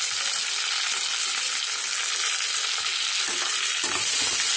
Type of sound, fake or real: real